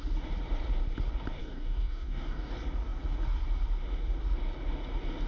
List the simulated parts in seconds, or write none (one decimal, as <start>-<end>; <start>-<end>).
1.4-2.5